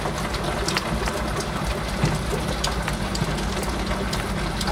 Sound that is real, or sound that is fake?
real